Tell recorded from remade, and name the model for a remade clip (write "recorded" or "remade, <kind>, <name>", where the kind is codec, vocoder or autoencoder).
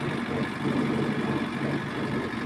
remade, vocoder, BigVGAN v2